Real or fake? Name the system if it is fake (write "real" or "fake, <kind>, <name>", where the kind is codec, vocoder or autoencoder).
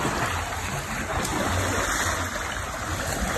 real